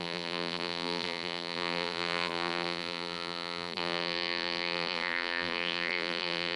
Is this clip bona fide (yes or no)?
no